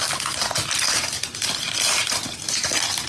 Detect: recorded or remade recorded